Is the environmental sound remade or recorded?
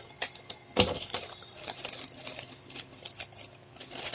remade